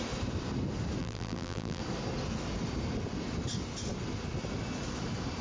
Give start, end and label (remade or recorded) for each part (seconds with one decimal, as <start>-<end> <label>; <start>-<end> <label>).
0.0-1.0 recorded; 1.0-1.8 remade; 1.8-5.4 recorded